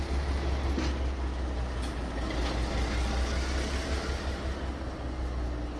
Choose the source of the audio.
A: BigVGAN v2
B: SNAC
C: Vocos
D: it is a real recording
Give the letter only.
D